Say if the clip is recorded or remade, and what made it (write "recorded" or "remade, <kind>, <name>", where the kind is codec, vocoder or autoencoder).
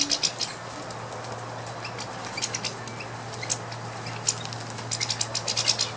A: recorded